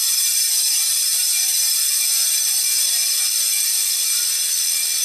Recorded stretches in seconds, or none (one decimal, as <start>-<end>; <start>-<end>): 0.0-5.0